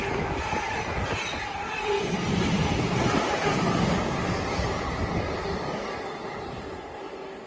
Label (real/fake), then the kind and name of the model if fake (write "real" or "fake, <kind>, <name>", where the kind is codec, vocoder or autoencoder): real